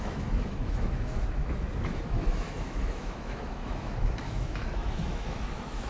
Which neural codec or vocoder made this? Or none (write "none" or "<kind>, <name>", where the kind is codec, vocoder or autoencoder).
autoencoder, DAC-VAE